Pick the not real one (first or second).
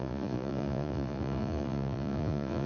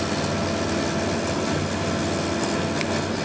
first